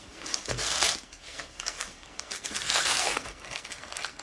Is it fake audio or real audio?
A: fake